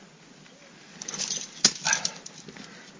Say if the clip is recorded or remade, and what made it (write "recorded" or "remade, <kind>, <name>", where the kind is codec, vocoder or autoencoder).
recorded